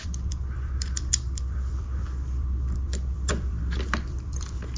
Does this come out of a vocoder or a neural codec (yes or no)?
yes